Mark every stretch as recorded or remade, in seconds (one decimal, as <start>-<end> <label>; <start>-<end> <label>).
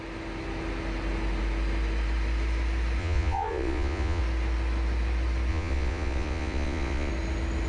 0.0-3.0 recorded; 3.0-4.2 remade; 4.2-5.5 recorded; 5.5-7.1 remade; 7.1-7.7 recorded